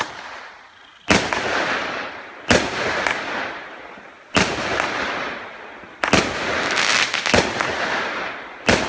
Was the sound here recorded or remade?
recorded